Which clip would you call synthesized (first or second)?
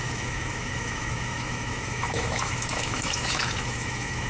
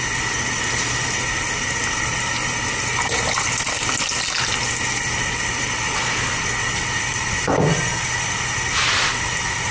first